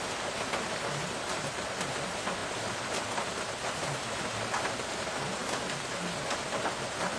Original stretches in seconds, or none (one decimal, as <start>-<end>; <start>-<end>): 0.0-7.2